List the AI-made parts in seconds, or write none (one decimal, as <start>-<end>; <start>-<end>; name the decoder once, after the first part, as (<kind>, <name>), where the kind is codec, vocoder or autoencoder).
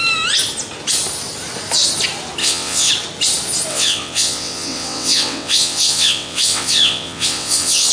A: 2.4-2.9 (vocoder, WaveNeXt); 3.7-7.9